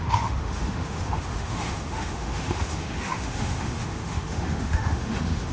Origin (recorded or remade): remade